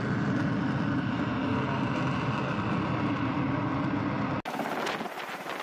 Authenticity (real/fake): real